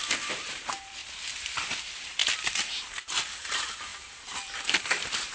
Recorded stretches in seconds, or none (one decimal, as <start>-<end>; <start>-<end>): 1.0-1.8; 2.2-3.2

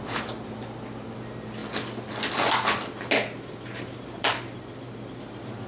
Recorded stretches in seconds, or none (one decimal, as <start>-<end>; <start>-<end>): 1.6-3.4; 4.3-5.2

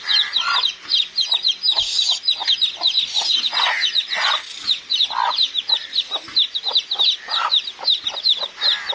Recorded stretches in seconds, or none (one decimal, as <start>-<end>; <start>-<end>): 0.0-2.4; 3.1-4.5; 5.1-8.9